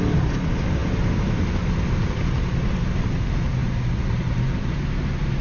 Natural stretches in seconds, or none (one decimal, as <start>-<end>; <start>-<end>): 0.0-5.4